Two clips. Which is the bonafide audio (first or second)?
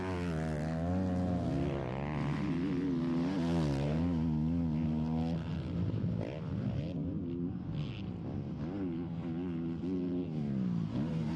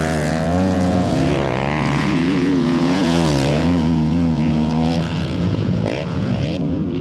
first